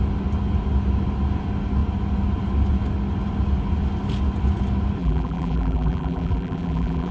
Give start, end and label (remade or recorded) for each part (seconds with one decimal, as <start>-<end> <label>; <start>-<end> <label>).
0.0-5.0 recorded; 5.0-7.1 remade